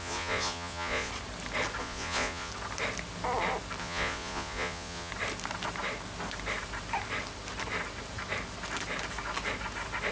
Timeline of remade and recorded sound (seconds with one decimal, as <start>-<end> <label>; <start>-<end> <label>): 0.0-1.1 remade; 1.1-1.8 recorded; 1.8-2.5 remade; 2.5-3.8 recorded; 3.8-5.1 remade; 5.1-10.1 recorded